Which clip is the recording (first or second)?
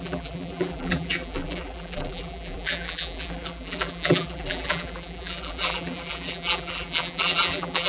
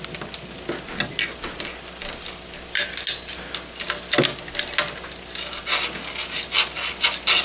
second